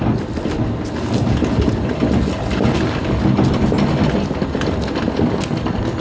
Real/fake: real